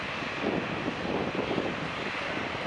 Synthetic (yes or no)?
yes